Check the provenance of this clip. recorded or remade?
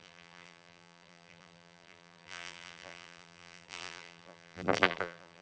remade